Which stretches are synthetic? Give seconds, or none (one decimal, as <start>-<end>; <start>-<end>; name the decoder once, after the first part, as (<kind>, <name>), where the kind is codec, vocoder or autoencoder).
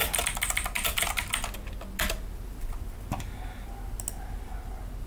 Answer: none